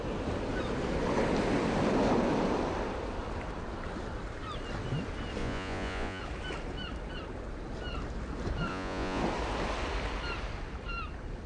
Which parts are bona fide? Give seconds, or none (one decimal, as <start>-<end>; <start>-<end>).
0.0-5.4; 6.2-8.7; 9.2-11.5